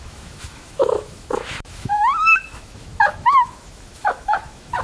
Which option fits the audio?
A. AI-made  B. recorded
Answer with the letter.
A